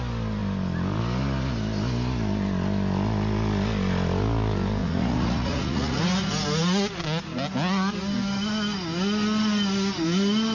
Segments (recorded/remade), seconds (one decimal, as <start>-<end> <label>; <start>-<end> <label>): 0.0-4.8 recorded; 4.8-6.0 remade; 6.0-10.5 recorded